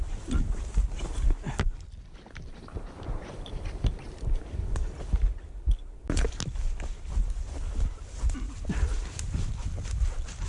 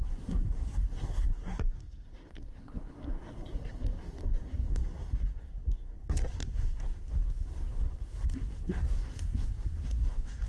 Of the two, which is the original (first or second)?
first